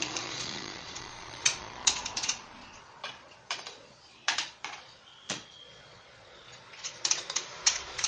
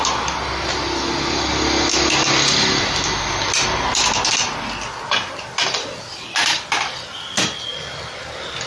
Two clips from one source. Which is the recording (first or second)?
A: second